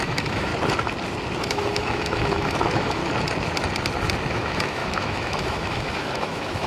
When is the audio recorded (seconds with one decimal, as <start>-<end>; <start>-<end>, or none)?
0.5-1.4; 3.0-4.3